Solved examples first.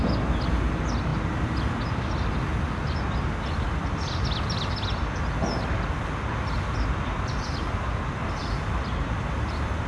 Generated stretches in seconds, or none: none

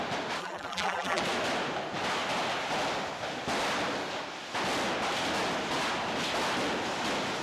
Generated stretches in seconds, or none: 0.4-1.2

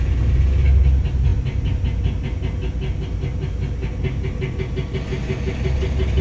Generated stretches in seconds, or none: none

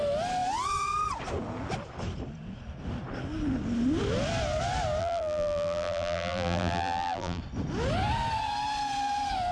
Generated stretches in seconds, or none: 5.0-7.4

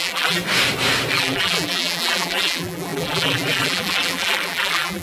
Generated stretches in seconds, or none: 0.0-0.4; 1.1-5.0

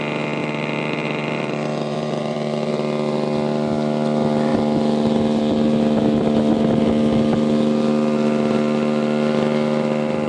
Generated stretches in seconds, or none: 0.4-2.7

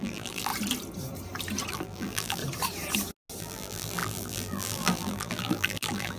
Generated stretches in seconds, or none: 0.0-0.5; 1.7-2.4; 3.4-6.2

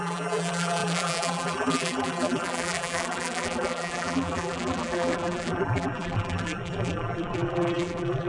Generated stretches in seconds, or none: 0.0-8.3